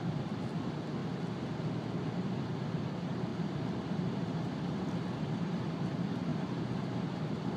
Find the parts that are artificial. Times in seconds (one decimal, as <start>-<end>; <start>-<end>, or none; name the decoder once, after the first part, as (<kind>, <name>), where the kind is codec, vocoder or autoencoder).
0.0-7.6 (vocoder, BigVGAN v2)